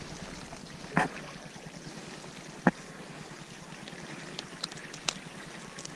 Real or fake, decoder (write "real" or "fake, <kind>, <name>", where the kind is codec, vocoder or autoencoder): real